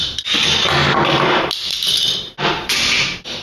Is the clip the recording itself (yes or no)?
yes